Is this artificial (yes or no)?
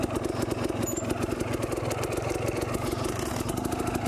no